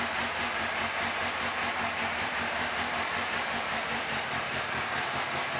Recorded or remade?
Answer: remade